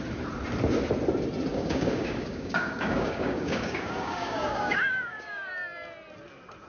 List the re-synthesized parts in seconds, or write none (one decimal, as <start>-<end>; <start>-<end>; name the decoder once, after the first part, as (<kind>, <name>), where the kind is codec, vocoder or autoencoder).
1.5-5.5 (codec, DAC)